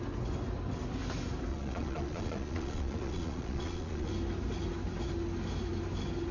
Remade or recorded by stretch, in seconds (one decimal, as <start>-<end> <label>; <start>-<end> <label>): 0.0-1.5 recorded; 1.5-4.1 remade; 4.1-6.3 recorded

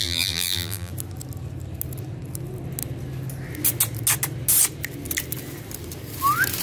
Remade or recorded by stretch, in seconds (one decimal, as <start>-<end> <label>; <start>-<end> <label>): 0.0-0.9 remade; 0.9-6.6 recorded

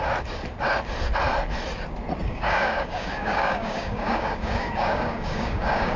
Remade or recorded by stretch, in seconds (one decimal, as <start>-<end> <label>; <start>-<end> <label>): 0.0-2.2 recorded; 2.2-6.0 remade

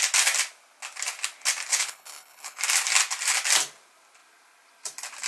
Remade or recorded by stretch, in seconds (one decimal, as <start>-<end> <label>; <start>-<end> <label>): 0.0-1.7 recorded; 1.7-2.6 remade; 2.6-5.3 recorded

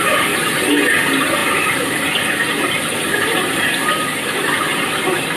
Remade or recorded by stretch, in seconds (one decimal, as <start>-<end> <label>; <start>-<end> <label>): 0.0-5.4 recorded